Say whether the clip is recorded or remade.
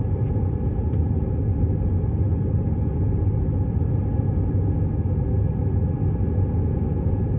recorded